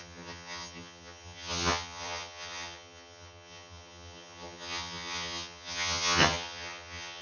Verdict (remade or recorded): remade